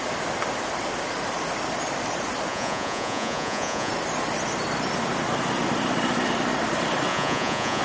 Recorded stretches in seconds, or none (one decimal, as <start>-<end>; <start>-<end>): 0.0-2.5; 3.9-7.1